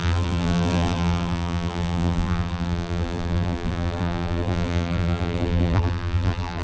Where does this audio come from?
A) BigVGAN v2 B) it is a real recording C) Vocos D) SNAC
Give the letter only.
A